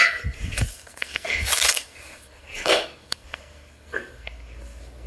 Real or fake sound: fake